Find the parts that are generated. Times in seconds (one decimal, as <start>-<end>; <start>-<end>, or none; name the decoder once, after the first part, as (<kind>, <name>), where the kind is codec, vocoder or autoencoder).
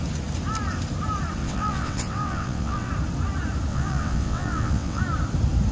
1.4-2.9 (vocoder, WaveNeXt); 3.7-5.0